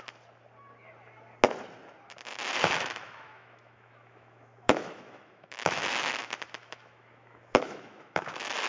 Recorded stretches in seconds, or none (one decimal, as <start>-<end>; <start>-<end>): 0.0-2.3; 6.1-6.6